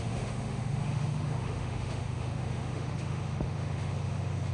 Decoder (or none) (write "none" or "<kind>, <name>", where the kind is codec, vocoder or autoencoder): autoencoder, DAC-VAE